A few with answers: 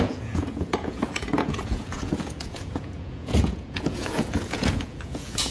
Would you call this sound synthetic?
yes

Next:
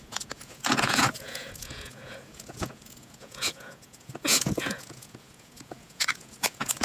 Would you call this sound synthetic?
yes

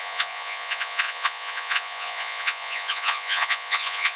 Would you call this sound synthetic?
yes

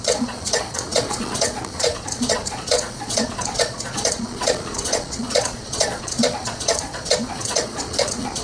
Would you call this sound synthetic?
yes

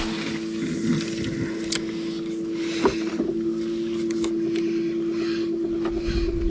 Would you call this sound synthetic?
no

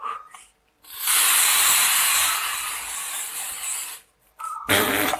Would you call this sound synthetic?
no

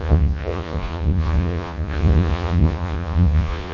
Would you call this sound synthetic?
yes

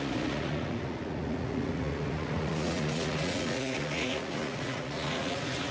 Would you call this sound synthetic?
yes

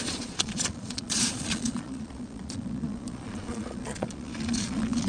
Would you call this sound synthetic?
yes